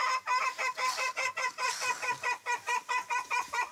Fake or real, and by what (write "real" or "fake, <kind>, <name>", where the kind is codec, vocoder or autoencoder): real